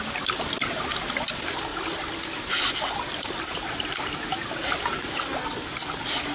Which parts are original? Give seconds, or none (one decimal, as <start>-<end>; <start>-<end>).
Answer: 0.0-6.3